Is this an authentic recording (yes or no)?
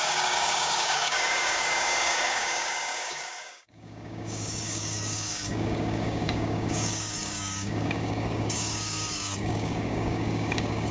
no